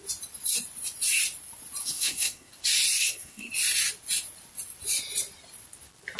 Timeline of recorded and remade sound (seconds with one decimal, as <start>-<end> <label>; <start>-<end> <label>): 0.0-1.8 recorded; 1.8-2.5 remade; 2.5-3.0 recorded; 3.0-3.5 remade; 3.5-6.2 recorded

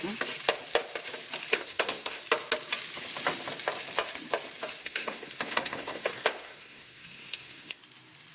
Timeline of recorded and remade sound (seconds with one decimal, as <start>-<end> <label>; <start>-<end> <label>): 0.0-1.5 recorded; 1.5-2.2 remade; 2.2-4.8 recorded; 4.8-7.8 remade; 7.8-8.3 recorded

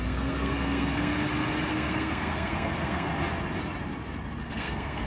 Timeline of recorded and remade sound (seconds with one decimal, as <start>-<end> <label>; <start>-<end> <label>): 0.0-1.1 remade; 1.1-1.7 recorded; 1.7-3.1 remade; 3.1-4.4 recorded; 4.4-5.1 remade

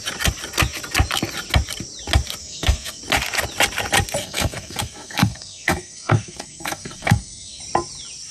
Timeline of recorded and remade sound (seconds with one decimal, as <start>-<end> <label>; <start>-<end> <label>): 0.0-2.4 recorded; 2.4-3.0 remade; 3.0-4.2 recorded; 4.2-7.6 remade; 7.6-8.3 recorded

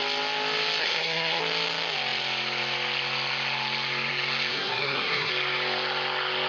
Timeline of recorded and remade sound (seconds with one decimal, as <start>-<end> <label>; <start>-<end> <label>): 0.0-0.8 recorded; 0.8-1.4 remade; 1.4-4.5 recorded; 4.5-5.3 remade; 5.3-6.5 recorded

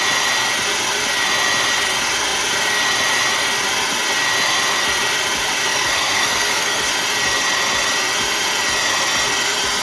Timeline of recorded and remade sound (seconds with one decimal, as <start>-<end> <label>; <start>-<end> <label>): 0.0-5.7 recorded; 5.7-6.9 remade; 6.9-9.8 recorded

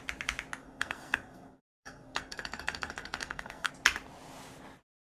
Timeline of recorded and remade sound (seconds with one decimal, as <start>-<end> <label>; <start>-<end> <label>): 0.0-0.6 recorded; 0.6-3.7 remade; 3.7-5.1 recorded

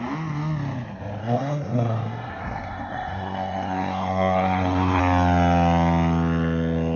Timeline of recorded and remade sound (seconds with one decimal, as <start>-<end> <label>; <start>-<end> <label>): 0.0-1.2 recorded; 1.2-5.0 remade; 5.0-7.0 recorded